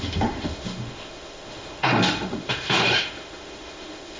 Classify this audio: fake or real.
fake